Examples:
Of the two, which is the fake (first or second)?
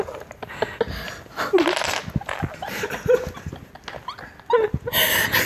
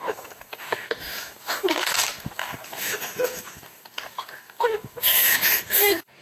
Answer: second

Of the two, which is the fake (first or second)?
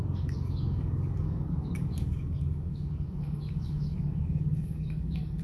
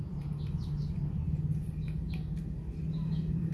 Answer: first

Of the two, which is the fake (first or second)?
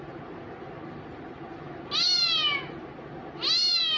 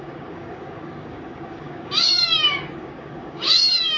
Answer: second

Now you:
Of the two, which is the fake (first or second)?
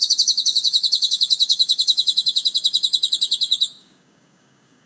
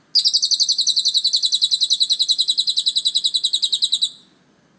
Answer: first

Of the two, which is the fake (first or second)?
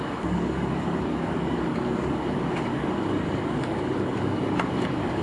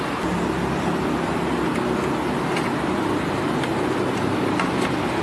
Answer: first